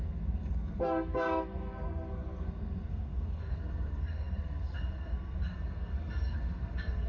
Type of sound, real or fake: fake